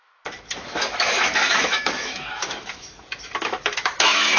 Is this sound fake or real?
fake